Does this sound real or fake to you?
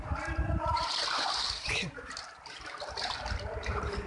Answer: fake